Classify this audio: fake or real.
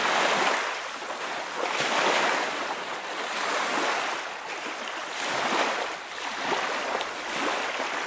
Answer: real